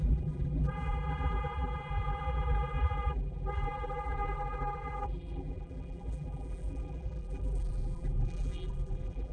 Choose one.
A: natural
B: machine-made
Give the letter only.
B